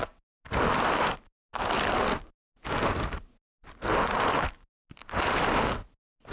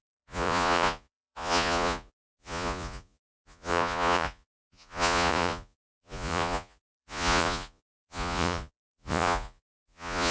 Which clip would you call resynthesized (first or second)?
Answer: second